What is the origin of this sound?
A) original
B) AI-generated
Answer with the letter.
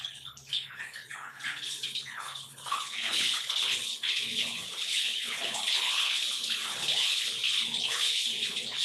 B